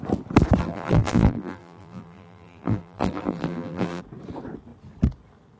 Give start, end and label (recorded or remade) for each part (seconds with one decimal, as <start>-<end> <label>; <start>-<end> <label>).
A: 0.0-0.6 recorded; 0.6-4.0 remade; 4.0-5.6 recorded